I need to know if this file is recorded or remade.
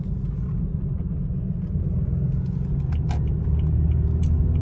recorded